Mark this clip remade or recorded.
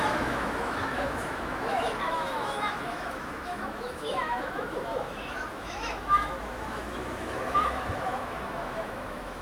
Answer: remade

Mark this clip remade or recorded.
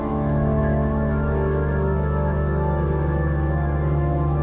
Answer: remade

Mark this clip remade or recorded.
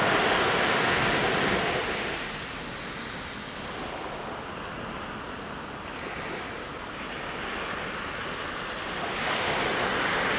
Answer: recorded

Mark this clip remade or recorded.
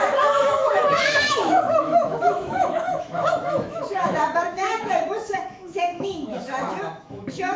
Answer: remade